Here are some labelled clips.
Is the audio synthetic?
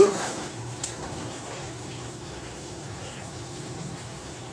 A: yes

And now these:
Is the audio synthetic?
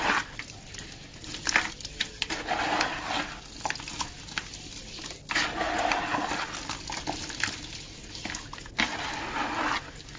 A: no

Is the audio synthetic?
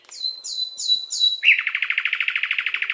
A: no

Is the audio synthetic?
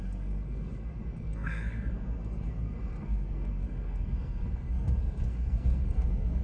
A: yes